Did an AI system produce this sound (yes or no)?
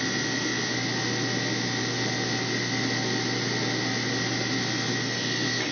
no